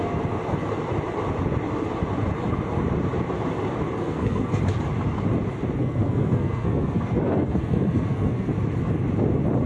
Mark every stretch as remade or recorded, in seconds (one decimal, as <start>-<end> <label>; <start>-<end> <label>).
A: 0.0-4.0 recorded; 4.0-4.6 remade; 4.6-5.8 recorded; 5.8-8.5 remade; 8.5-9.7 recorded

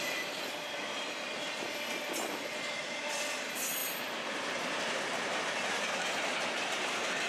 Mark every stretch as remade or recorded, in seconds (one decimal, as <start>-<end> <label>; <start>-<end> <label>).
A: 0.0-7.3 recorded

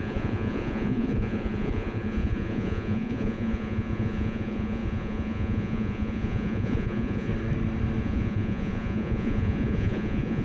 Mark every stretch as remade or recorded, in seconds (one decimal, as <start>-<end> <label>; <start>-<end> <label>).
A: 0.0-7.3 remade; 7.3-8.0 recorded; 8.0-10.4 remade

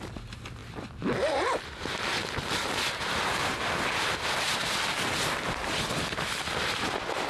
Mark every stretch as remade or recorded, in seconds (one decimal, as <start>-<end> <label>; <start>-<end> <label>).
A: 0.0-7.3 recorded

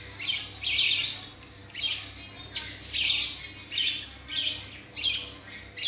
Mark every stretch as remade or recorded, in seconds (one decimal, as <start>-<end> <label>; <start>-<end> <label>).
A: 0.0-5.9 recorded

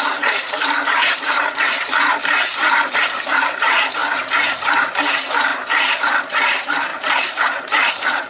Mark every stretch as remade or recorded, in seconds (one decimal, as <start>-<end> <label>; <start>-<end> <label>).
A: 0.0-5.5 remade; 5.5-6.0 recorded; 6.0-8.3 remade

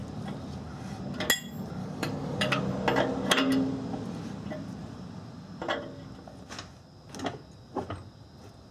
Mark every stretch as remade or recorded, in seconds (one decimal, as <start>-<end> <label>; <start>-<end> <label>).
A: 0.0-1.8 recorded; 1.8-2.6 remade; 2.6-8.7 recorded